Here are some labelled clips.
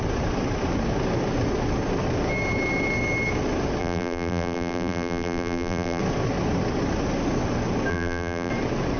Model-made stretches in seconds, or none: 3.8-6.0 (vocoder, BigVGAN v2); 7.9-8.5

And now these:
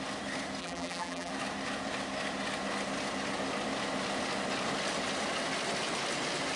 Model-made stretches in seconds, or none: 0.6-1.3 (vocoder, BigVGAN v2)